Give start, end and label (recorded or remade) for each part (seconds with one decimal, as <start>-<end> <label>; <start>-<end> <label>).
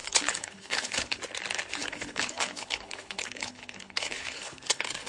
0.0-1.2 remade; 1.2-1.8 recorded; 1.8-5.1 remade